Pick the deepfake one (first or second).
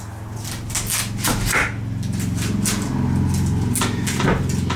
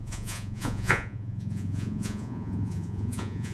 second